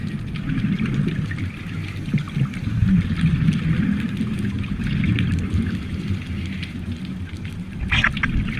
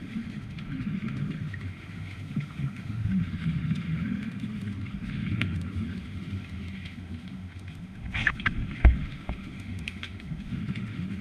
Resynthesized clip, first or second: second